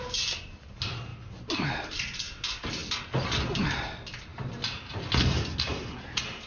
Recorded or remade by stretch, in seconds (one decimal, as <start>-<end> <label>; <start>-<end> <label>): 0.0-6.5 recorded